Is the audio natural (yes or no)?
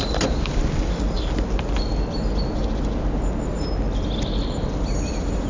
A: yes